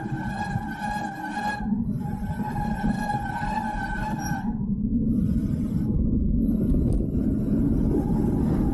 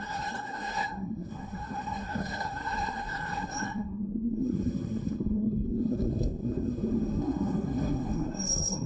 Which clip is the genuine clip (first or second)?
first